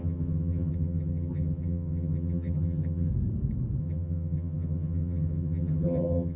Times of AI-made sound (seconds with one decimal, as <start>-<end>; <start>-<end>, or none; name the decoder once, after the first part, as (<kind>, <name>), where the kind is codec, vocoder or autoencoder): 0.0-3.1 (vocoder, HiFi-GAN); 3.8-6.4